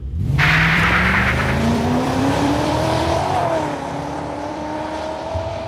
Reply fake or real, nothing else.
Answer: fake